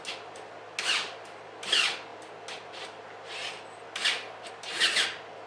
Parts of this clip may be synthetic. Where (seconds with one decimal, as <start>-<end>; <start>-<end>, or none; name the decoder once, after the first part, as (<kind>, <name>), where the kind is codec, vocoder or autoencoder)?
none